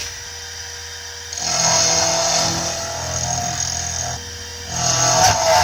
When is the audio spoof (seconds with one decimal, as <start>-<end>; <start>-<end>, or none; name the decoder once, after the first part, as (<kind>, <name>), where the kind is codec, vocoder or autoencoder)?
none